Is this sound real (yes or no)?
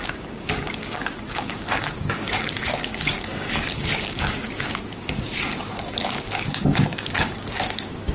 no